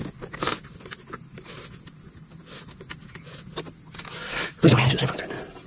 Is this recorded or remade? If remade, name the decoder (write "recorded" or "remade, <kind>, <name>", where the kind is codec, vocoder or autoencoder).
recorded